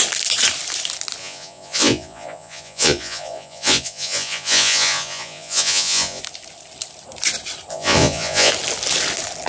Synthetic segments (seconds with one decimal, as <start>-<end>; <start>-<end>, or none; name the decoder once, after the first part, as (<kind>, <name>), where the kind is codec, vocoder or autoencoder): 1.2-6.2 (vocoder, Vocos); 7.7-8.5